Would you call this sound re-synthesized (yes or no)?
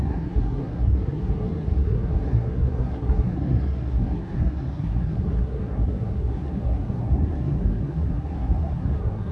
yes